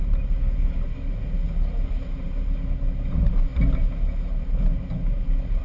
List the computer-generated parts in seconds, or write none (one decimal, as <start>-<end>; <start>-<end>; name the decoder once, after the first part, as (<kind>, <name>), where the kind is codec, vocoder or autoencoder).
none